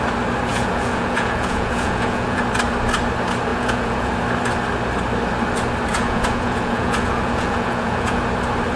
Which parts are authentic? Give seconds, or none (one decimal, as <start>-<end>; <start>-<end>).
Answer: 0.0-0.5; 2.4-3.5; 4.1-5.9; 8.2-8.8